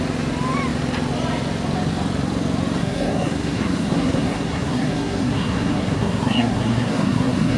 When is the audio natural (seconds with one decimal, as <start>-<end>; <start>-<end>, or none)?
0.0-2.8